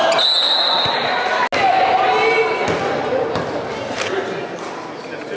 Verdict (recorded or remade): recorded